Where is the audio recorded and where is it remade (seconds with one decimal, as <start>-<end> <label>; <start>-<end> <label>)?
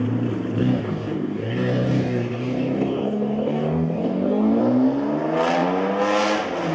0.0-0.6 recorded; 0.6-4.6 remade; 4.6-6.7 recorded